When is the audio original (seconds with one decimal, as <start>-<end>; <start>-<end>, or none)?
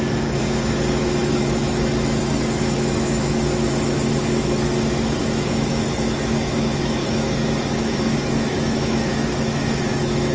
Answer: 0.4-1.0